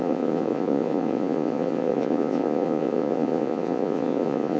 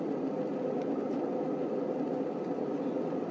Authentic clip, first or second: second